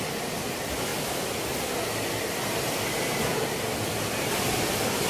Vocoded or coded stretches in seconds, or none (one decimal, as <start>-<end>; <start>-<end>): 0.0-0.9; 4.0-5.1